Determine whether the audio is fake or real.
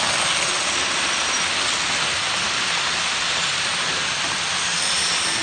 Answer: real